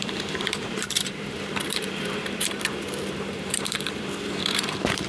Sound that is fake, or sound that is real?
fake